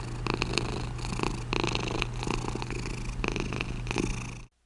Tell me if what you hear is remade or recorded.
recorded